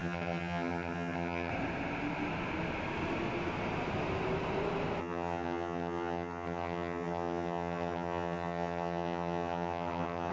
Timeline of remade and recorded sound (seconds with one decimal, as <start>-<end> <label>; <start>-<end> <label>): 0.0-1.5 remade; 1.5-5.0 recorded; 5.0-10.3 remade